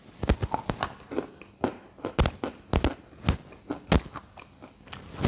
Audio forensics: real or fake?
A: real